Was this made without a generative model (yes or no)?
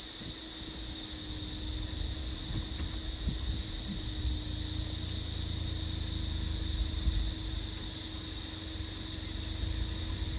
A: yes